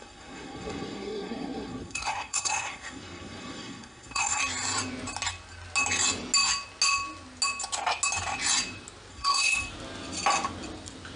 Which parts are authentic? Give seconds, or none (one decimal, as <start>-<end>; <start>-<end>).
4.4-9.1; 9.6-11.2